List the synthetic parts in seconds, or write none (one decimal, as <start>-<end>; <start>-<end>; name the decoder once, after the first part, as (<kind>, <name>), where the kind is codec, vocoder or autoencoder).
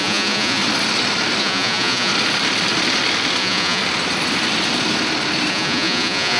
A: 0.0-0.6 (vocoder, Vocos); 1.4-2.1; 3.4-3.8; 5.5-6.4